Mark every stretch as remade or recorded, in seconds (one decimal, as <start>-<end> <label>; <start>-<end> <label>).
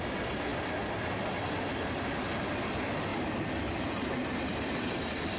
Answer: 0.0-3.1 recorded; 3.1-5.0 remade; 5.0-5.4 recorded